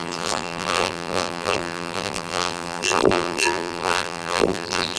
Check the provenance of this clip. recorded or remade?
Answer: remade